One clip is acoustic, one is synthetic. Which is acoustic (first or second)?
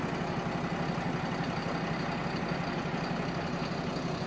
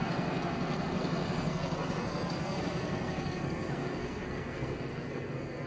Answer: first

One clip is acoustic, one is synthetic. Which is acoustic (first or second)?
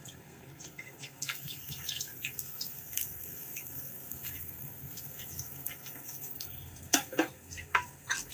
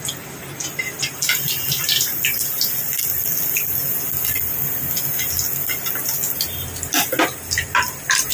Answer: second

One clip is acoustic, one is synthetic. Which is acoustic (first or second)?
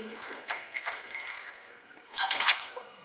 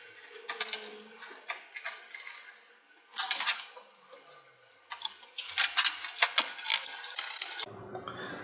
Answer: second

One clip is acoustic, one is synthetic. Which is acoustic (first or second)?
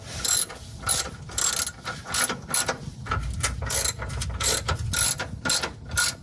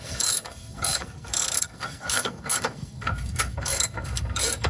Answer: first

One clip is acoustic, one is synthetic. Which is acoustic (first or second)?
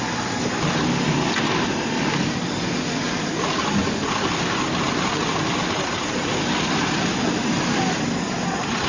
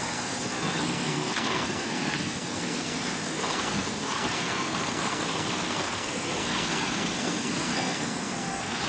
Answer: first